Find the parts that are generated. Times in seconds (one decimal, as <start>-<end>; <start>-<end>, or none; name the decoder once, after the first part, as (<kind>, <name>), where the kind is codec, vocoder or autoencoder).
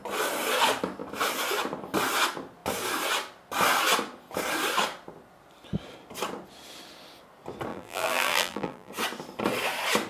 7.7-8.9 (vocoder, BigVGAN v2)